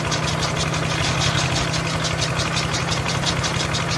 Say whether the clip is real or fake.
real